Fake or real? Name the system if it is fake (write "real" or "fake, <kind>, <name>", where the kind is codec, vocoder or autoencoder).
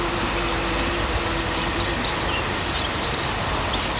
real